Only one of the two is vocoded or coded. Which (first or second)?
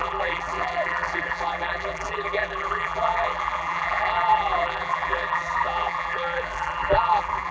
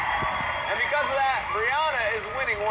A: first